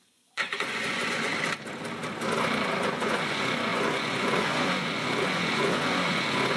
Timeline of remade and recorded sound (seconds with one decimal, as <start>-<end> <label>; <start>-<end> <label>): 0.0-1.3 remade; 1.3-2.8 recorded; 2.8-6.6 remade